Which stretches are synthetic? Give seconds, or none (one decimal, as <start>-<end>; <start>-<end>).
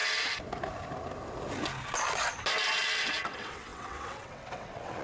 3.0-5.0